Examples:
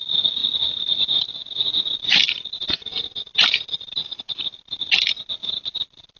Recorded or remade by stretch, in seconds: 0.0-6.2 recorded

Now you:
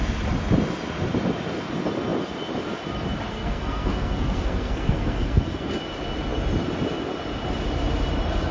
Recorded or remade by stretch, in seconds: 0.0-3.3 recorded; 3.3-5.7 remade; 5.7-8.5 recorded

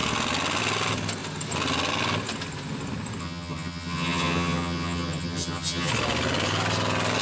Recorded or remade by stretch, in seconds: 0.0-3.2 recorded; 3.2-5.9 remade; 5.9-7.2 recorded

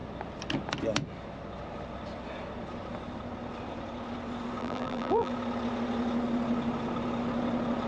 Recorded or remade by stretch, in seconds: 0.0-4.6 recorded; 4.6-5.3 remade; 5.3-7.9 recorded

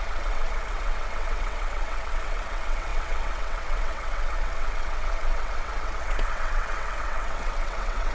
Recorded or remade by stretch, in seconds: 0.0-8.1 remade

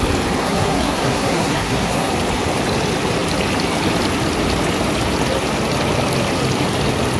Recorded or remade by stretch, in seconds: 0.0-0.4 recorded; 0.4-2.1 remade; 2.1-7.2 recorded

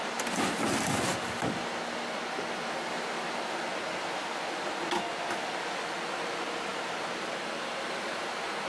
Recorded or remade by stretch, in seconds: 0.0-8.7 recorded